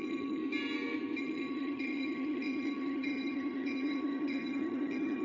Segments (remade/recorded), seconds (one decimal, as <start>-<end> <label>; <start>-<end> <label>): 0.0-0.4 remade; 0.4-1.2 recorded; 1.2-5.2 remade